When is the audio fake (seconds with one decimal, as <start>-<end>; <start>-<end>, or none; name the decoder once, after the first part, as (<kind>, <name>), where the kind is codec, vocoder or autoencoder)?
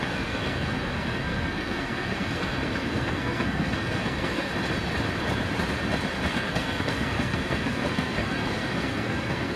0.0-4.5 (codec, SNAC); 6.3-9.6